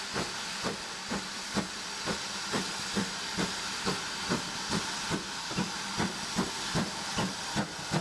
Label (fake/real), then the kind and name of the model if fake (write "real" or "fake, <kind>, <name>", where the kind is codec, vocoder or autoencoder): fake, vocoder, BigVGAN v2